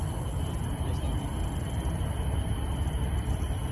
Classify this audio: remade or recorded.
recorded